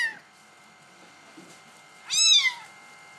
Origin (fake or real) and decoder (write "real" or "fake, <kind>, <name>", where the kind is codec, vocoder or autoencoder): real